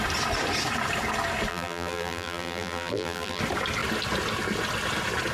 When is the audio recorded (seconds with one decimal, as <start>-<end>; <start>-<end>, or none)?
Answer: 0.0-1.5; 3.4-5.3

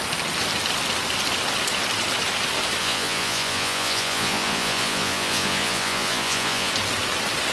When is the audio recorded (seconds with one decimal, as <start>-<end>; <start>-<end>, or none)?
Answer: 0.0-2.8; 6.7-7.5

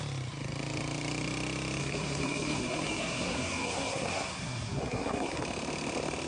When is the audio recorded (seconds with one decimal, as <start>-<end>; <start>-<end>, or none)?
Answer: 0.0-1.8; 5.4-6.3

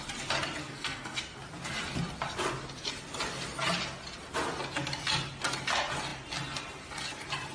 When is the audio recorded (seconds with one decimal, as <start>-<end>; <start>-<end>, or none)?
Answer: 0.0-0.6; 1.2-7.5

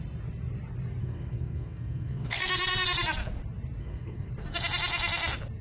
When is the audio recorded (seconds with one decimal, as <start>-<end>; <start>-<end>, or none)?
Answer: 0.0-1.0; 3.0-3.8; 4.3-5.6

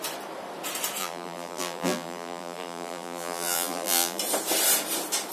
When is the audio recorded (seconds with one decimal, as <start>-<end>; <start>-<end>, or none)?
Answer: 0.0-1.0; 4.2-5.3